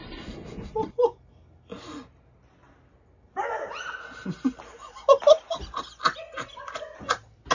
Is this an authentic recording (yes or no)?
yes